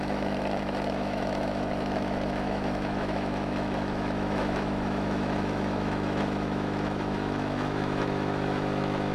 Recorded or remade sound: remade